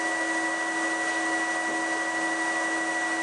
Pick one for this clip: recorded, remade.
recorded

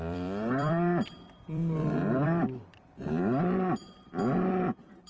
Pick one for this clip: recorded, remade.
remade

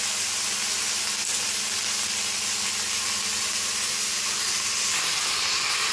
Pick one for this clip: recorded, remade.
recorded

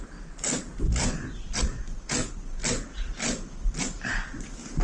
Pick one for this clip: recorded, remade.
recorded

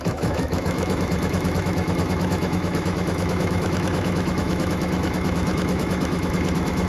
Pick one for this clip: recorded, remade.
remade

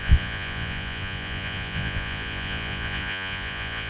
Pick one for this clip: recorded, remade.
remade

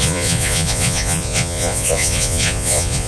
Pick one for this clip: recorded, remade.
remade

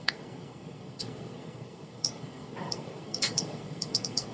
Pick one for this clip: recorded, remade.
remade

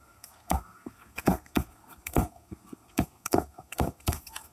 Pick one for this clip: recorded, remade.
remade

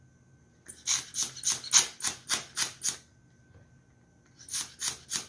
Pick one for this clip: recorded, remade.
recorded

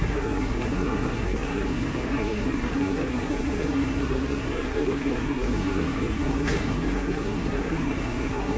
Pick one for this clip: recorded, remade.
remade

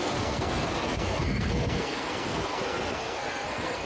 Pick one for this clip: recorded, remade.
remade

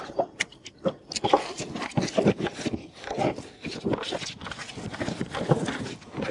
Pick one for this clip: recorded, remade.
recorded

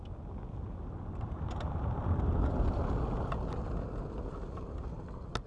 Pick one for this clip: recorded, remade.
recorded